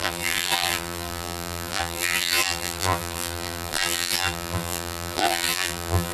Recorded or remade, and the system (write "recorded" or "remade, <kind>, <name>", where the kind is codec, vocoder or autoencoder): remade, vocoder, BigVGAN v2